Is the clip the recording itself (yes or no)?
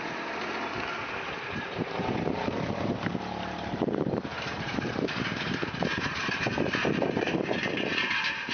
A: no